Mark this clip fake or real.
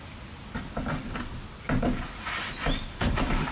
real